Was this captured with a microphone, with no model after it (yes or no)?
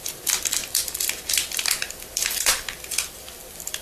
no